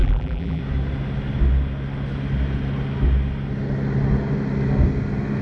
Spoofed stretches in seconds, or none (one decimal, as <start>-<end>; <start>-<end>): 0.0-0.6